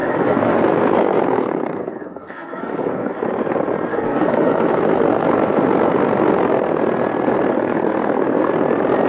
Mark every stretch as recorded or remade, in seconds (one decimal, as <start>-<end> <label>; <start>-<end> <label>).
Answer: 0.0-3.2 remade; 3.2-3.9 recorded; 3.9-5.3 remade; 5.3-7.5 recorded; 7.5-8.5 remade; 8.5-9.1 recorded